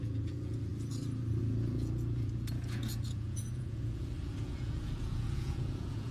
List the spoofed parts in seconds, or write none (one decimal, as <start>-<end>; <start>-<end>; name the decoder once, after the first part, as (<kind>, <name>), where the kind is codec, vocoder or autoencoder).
0.0-0.7 (vocoder, Vocos); 1.4-6.1